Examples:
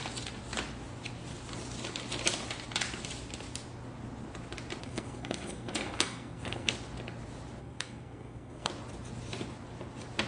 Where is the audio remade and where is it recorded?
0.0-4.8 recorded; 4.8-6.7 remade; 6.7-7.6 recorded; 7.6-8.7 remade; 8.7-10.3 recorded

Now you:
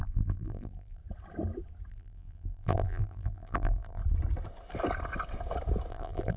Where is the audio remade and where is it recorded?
0.0-1.0 remade; 1.0-1.9 recorded; 1.9-4.0 remade; 4.0-5.9 recorded; 5.9-6.4 remade

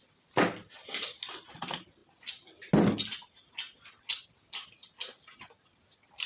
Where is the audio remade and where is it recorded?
0.0-6.3 recorded

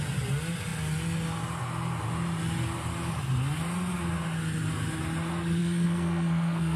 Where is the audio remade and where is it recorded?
0.0-5.6 recorded; 5.6-6.8 remade

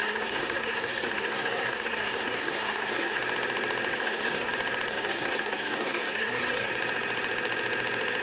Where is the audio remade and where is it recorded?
0.0-3.2 remade; 3.2-3.9 recorded; 3.9-4.5 remade; 4.5-4.9 recorded; 4.9-6.7 remade; 6.7-8.2 recorded